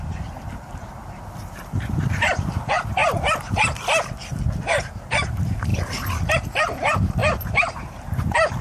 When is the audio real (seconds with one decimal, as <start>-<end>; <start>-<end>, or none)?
3.0-5.1; 5.7-6.3